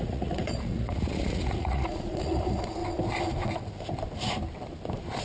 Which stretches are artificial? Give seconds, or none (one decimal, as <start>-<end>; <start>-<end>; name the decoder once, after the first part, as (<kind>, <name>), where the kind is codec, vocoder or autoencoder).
0.0-2.8 (vocoder, Vocos)